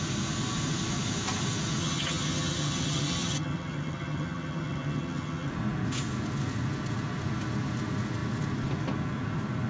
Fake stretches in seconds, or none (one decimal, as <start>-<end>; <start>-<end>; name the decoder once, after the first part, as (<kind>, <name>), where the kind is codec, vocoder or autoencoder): 1.8-5.5 (vocoder, HiFi-GAN)